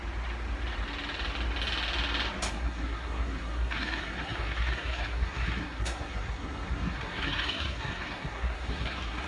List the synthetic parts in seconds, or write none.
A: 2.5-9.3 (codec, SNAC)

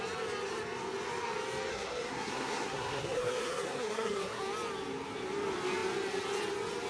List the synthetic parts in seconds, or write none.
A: 1.7-4.4 (codec, SNAC)